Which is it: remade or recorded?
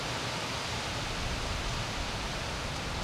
recorded